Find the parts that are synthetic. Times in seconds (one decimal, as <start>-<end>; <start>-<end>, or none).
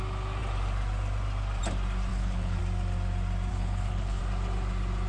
2.1-2.6; 3.5-4.2